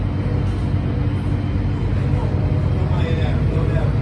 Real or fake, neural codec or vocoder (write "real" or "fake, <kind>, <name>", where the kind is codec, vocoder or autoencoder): real